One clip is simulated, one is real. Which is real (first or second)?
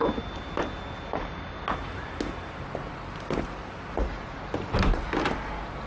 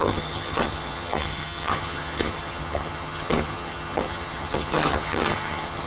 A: first